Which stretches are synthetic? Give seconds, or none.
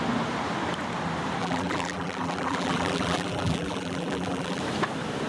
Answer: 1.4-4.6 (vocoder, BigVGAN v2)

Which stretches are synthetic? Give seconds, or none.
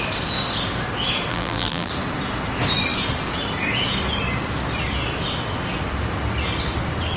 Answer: 1.3-1.9 (vocoder, BigVGAN v2)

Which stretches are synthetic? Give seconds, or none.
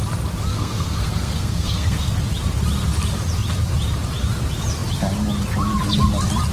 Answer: 0.5-2.1 (codec, SNAC)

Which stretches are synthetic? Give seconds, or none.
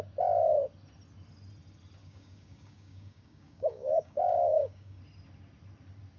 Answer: 2.0-5.0 (codec, DAC)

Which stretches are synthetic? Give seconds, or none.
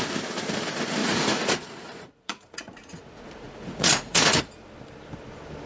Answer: 1.0-4.4 (vocoder, Vocos)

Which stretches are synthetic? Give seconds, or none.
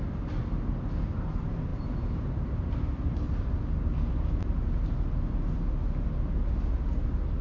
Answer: none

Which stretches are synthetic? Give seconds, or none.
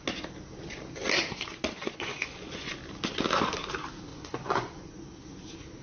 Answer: 1.8-2.7 (vocoder, Vocos); 4.1-5.0